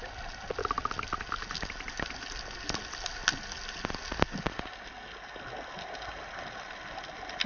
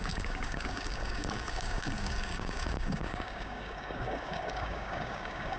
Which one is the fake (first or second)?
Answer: second